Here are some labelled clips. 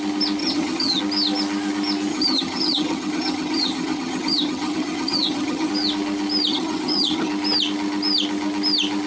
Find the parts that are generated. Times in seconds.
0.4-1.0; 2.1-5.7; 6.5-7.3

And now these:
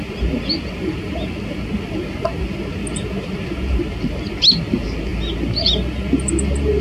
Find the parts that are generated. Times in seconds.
none